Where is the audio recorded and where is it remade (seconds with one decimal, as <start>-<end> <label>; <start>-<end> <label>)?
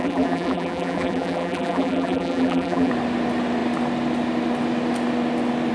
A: 0.0-2.9 remade; 2.9-5.7 recorded